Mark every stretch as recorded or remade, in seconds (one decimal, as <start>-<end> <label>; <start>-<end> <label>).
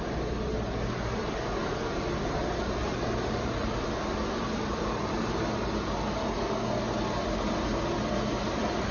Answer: 0.0-2.8 recorded; 2.8-3.5 remade; 3.5-4.7 recorded; 4.7-5.4 remade; 5.4-8.9 recorded